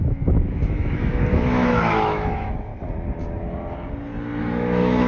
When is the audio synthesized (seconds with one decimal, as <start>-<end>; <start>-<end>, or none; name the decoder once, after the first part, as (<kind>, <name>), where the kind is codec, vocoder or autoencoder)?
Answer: 0.0-2.7 (autoencoder, DAC-VAE); 4.4-5.1